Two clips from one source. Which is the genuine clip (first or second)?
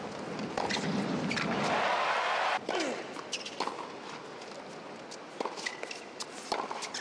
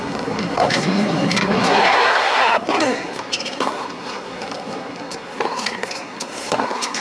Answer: first